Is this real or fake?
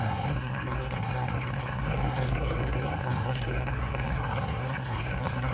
fake